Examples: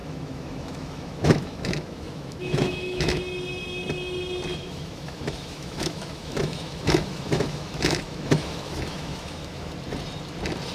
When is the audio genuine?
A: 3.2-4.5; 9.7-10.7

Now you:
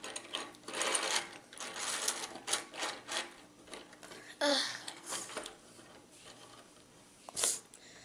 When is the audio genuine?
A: 0.0-4.5; 5.1-8.0

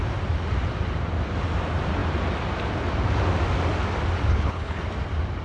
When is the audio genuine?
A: 0.0-4.3; 4.8-5.4

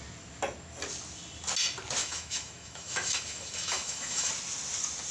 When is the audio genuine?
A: 0.0-2.0; 4.3-5.1

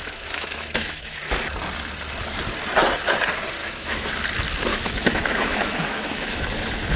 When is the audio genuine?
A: 1.2-3.6; 4.1-4.7; 6.4-7.0

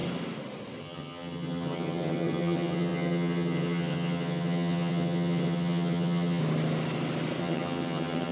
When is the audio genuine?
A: 0.0-0.8; 6.4-7.4